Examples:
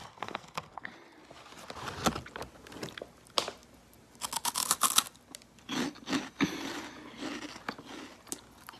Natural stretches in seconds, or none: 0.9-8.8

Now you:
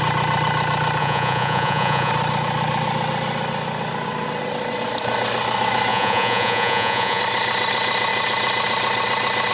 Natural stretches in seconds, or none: 0.0-1.0; 2.1-5.9; 7.2-9.5

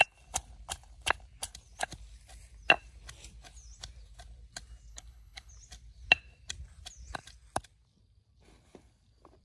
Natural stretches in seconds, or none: 0.0-4.9; 5.5-9.4

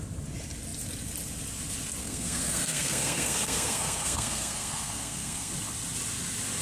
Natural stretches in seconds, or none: 0.0-2.0; 5.5-6.6

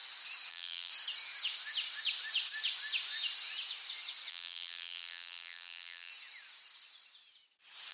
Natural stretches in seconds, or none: 0.0-0.5; 0.9-4.3; 6.1-7.9

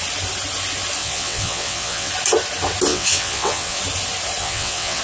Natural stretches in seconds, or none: 0.0-1.0; 2.1-2.9; 3.8-4.4